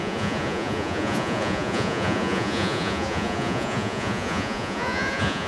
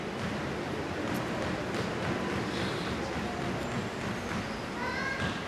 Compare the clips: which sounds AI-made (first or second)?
first